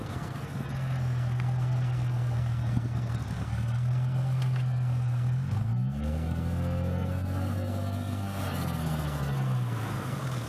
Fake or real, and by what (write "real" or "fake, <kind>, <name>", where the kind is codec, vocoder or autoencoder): fake, codec, SNAC